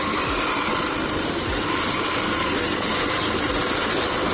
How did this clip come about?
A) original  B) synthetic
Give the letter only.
A